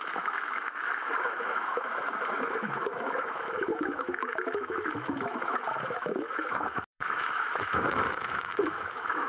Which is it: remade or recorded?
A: remade